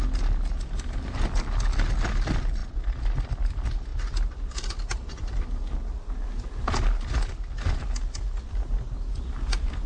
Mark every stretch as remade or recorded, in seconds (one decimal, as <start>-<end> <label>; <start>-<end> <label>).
0.0-9.9 recorded